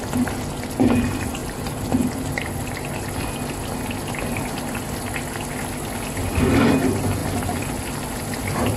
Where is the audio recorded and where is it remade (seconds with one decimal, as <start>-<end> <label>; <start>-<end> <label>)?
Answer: 0.0-8.8 recorded